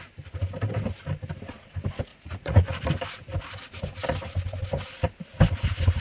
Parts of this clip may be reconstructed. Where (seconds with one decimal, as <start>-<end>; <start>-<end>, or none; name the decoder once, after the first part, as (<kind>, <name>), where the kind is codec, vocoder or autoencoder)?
2.1-2.9 (vocoder, Vocos)